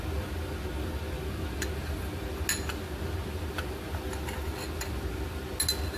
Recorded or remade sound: recorded